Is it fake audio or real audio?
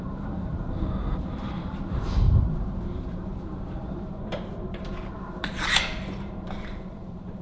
fake